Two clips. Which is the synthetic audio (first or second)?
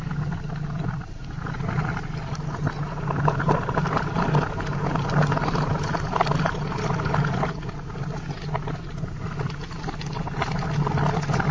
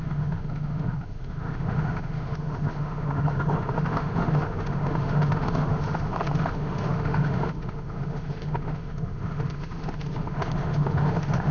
second